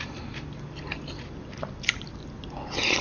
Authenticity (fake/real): real